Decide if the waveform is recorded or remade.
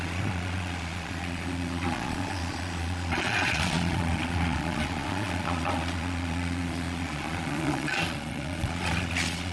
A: remade